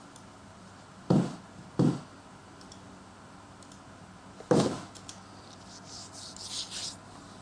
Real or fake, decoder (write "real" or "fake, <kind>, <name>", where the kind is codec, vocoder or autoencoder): real